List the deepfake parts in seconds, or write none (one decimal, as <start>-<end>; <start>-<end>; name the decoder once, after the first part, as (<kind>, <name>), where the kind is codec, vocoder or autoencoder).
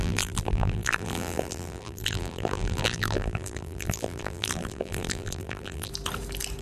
0.0-5.9 (vocoder, BigVGAN v2)